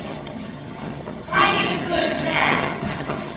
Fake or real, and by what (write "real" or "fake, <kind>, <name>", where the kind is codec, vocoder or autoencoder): fake, vocoder, HiFi-GAN